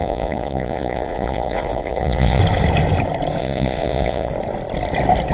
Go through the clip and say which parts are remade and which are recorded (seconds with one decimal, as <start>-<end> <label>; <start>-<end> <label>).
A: 0.0-2.4 remade; 2.4-3.4 recorded; 3.4-4.3 remade; 4.3-5.3 recorded